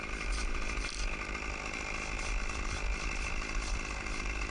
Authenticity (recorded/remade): remade